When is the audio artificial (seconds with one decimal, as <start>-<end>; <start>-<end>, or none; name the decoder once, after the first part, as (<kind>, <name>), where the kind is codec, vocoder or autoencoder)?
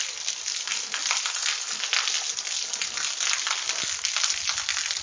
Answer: none